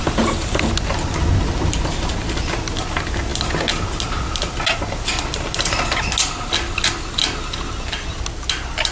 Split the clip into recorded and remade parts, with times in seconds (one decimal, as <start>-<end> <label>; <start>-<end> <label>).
0.0-8.9 recorded